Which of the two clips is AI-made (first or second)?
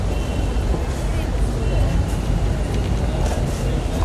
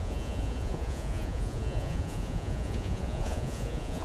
second